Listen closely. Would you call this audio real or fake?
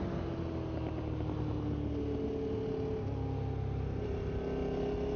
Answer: real